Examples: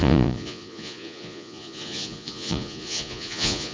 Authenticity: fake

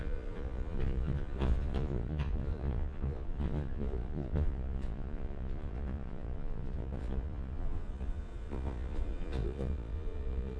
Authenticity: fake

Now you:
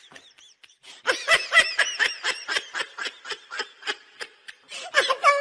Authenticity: real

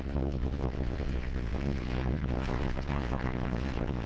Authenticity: fake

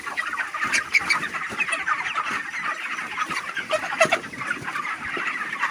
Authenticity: real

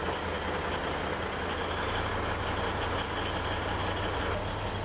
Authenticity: real